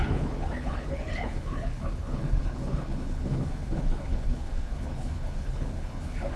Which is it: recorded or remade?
remade